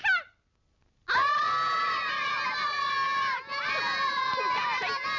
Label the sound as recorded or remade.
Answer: recorded